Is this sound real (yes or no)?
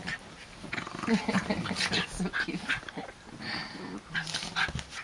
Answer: yes